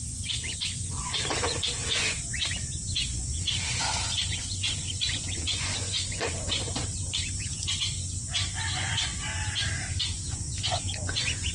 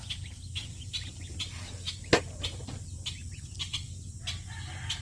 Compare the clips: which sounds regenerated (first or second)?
first